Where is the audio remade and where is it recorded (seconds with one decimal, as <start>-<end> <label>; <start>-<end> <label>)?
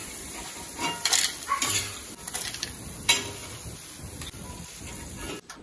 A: 0.0-2.1 remade; 2.1-3.4 recorded; 3.4-5.6 remade